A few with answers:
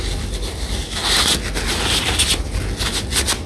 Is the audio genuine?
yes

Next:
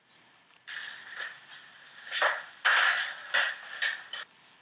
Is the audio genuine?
yes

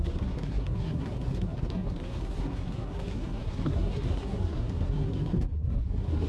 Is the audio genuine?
no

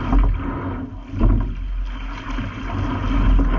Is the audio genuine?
yes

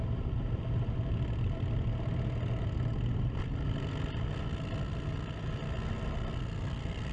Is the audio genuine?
yes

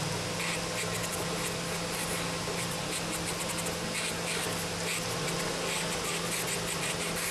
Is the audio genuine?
yes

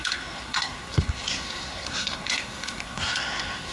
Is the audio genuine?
no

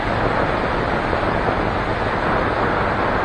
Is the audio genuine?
yes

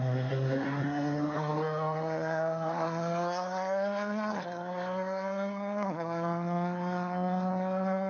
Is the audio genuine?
no